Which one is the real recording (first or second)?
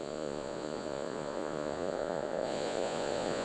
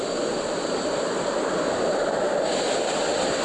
second